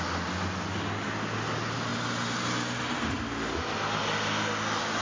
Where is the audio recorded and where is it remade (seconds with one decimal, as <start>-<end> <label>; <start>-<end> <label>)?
0.0-5.0 recorded